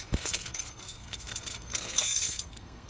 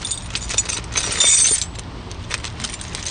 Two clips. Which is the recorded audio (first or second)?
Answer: second